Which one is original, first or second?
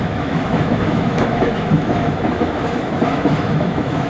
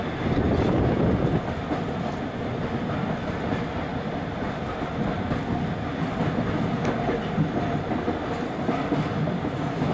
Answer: second